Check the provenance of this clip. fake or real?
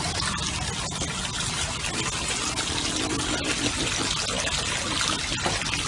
real